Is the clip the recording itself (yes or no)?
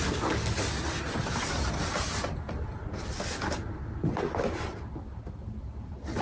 yes